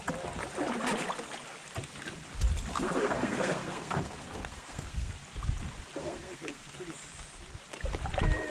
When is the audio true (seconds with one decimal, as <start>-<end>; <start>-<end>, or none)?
0.0-2.7; 5.1-6.0; 6.7-8.5